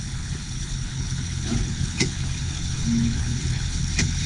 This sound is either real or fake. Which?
fake